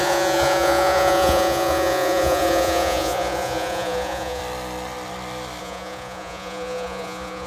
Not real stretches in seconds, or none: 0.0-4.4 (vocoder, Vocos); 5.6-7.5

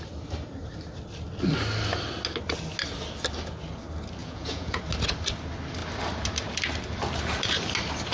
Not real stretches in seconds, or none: 4.2-4.8 (vocoder, Vocos)

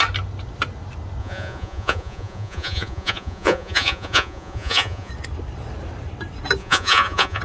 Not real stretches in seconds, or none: 1.2-5.1 (vocoder, Vocos); 6.6-7.4

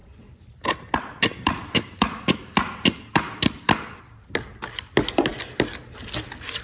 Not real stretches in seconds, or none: 0.0-4.0 (vocoder, BigVGAN v2)

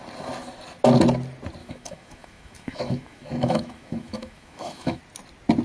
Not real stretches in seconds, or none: 1.6-5.0 (autoencoder, DAC-VAE)

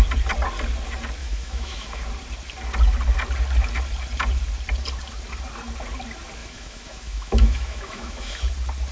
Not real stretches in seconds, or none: 1.2-2.0 (autoencoder, DAC-VAE); 6.4-8.4